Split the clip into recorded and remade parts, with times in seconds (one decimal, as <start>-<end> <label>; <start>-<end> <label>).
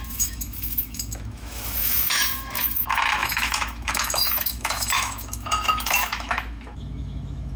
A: 0.0-7.6 remade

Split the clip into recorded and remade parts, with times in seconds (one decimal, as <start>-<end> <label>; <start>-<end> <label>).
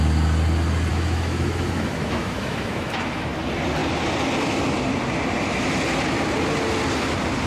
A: 0.0-0.9 recorded; 0.9-3.4 remade; 3.4-7.5 recorded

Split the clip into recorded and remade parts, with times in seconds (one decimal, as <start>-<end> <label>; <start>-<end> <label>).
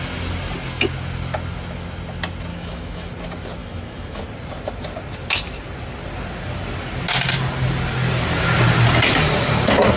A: 0.0-2.5 recorded; 2.5-3.1 remade; 3.1-3.6 recorded; 3.6-4.2 remade; 4.2-10.0 recorded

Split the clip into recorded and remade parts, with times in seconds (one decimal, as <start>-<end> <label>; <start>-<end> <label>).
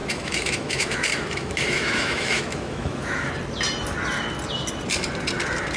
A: 0.0-3.3 remade; 3.3-5.8 recorded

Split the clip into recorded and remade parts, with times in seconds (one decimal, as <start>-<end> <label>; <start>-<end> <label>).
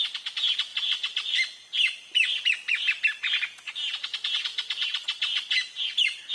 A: 0.0-6.3 recorded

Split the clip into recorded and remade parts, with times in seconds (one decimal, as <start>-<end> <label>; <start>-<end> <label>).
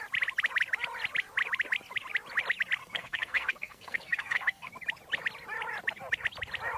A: 0.0-2.8 recorded; 2.8-4.7 remade; 4.7-6.8 recorded